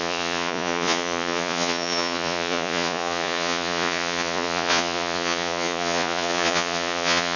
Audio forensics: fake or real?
fake